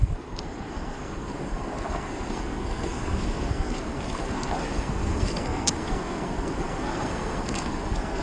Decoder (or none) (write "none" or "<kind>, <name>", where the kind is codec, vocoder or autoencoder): codec, SNAC